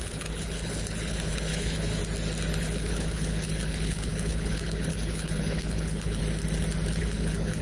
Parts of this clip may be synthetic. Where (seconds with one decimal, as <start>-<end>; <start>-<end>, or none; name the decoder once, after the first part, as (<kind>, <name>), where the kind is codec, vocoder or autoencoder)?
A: 0.0-2.0 (codec, HILCodec); 2.6-6.2; 7.0-7.6